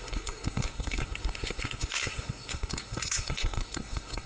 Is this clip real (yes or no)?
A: no